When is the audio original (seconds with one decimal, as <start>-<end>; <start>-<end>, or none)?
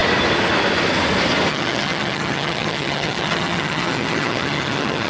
0.0-1.5